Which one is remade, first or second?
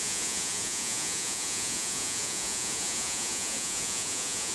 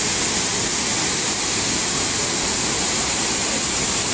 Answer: first